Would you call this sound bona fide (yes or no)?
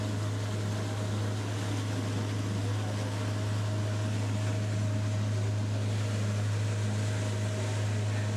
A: yes